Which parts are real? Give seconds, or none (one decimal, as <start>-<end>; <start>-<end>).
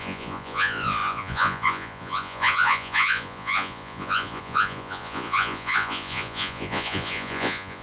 none